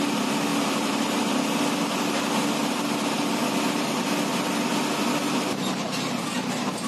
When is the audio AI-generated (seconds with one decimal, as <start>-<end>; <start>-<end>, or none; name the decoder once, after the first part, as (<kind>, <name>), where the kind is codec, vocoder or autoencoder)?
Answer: 0.5-1.4 (vocoder, BigVGAN v2)